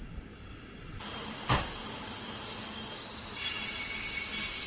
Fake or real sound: real